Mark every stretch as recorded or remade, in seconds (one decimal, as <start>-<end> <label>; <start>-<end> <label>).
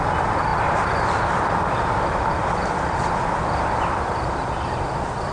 0.0-5.3 remade